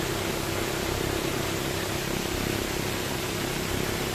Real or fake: real